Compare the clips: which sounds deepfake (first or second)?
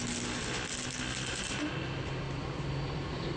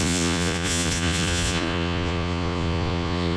second